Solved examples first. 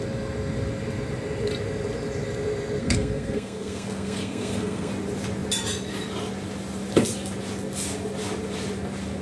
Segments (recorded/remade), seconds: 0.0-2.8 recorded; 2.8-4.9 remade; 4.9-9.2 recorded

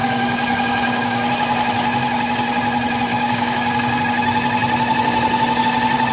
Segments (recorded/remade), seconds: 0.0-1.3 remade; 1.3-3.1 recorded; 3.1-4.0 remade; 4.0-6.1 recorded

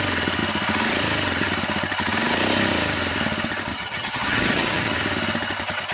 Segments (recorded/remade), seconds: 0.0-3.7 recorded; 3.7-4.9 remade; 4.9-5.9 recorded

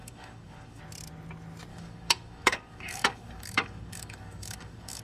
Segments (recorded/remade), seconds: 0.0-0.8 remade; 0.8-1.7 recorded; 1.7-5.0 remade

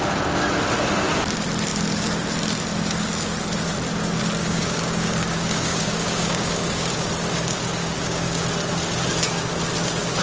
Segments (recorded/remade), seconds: 0.0-4.4 recorded; 4.4-7.1 remade; 7.1-7.8 recorded; 7.8-8.4 remade; 8.4-10.2 recorded

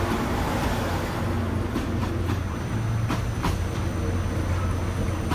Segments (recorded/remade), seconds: 0.0-5.3 recorded